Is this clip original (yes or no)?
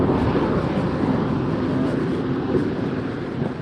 yes